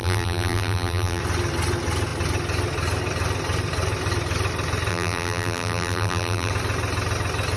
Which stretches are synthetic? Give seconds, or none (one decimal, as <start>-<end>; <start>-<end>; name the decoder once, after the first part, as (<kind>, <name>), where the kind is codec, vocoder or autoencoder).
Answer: 0.0-1.2 (vocoder, BigVGAN v2); 4.9-6.5